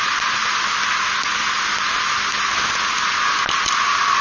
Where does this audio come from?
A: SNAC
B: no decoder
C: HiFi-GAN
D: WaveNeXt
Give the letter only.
B